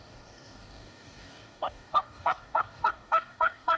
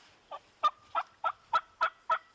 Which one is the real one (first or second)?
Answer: second